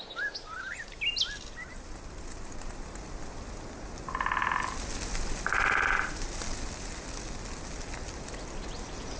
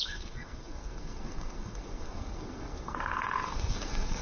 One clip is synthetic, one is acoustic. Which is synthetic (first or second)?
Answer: second